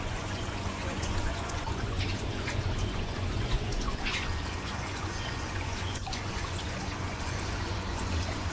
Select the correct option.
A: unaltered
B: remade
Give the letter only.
B